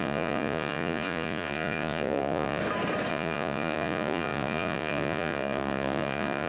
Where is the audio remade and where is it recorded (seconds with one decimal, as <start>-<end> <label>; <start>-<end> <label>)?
0.0-2.6 remade; 2.6-3.1 recorded; 3.1-6.5 remade